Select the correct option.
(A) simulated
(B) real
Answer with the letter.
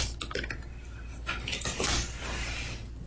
B